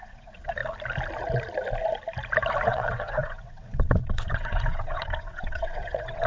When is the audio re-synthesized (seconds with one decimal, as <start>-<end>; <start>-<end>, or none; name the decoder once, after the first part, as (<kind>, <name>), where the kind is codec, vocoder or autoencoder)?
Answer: 0.0-0.6 (vocoder, WaveNeXt); 2.7-6.3